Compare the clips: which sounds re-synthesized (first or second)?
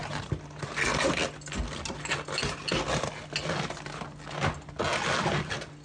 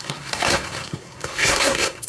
second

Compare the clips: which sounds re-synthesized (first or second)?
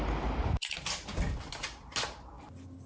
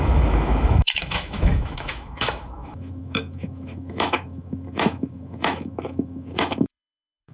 second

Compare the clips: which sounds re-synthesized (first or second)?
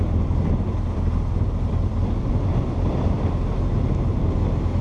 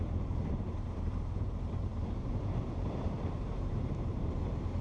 second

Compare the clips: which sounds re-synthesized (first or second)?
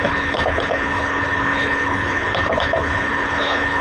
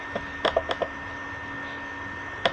first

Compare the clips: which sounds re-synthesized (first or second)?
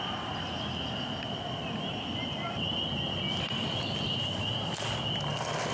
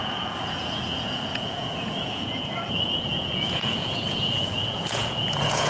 second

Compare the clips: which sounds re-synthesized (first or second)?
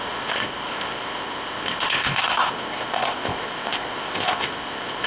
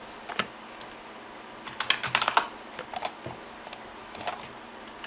first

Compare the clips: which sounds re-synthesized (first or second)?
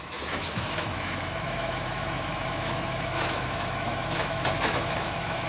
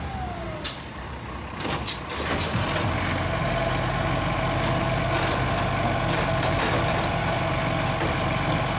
first